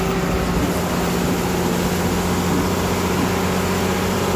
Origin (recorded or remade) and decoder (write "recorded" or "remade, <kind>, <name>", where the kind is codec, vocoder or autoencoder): recorded